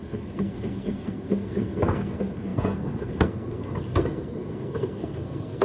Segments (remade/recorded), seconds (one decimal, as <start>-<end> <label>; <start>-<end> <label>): 0.0-5.6 remade